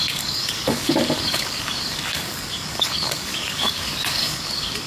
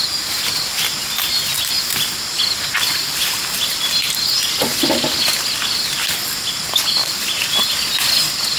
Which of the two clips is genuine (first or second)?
second